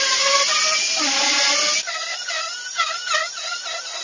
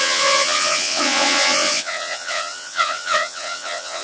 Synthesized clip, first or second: second